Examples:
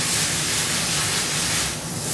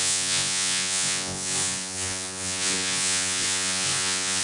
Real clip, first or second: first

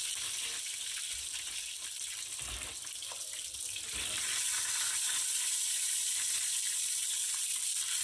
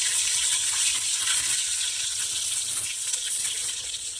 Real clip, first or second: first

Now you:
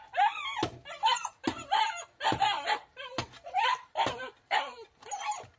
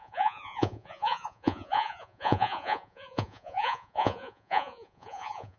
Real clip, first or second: first